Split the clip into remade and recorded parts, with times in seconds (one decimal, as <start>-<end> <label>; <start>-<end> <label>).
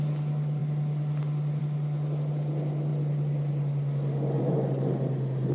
0.0-5.5 recorded